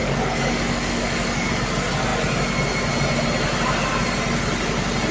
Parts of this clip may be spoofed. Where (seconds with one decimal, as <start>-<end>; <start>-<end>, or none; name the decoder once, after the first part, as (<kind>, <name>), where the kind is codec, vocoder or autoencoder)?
0.0-1.7 (codec, DAC)